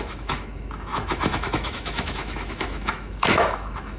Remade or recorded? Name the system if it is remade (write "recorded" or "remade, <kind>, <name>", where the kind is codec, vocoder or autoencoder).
remade, autoencoder, DAC-VAE